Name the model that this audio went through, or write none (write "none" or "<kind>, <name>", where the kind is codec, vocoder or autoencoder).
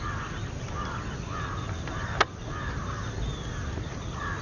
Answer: none